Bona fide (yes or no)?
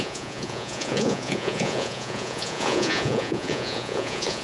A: no